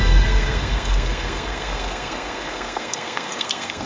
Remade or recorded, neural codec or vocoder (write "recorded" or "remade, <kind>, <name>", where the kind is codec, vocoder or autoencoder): remade, codec, SNAC